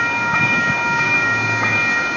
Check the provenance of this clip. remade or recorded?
remade